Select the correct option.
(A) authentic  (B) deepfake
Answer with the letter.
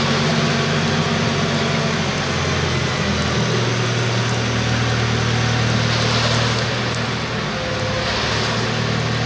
A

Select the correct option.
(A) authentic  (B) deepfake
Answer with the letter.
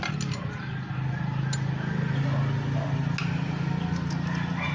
A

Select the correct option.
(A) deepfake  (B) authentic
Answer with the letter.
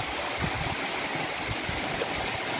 B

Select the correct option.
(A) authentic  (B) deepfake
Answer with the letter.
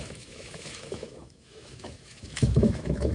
B